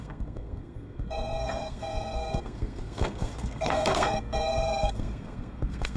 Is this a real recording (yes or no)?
no